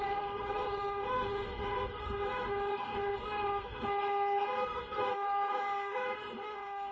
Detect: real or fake fake